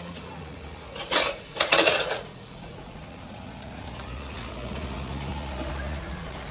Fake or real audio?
fake